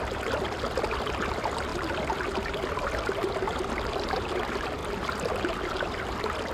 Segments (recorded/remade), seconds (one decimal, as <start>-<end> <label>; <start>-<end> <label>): 0.0-6.5 recorded